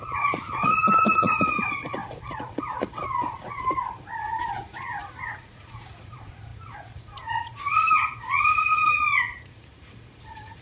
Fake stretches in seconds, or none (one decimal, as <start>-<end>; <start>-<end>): 0.0-10.6